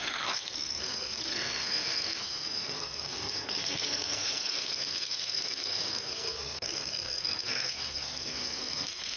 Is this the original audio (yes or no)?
no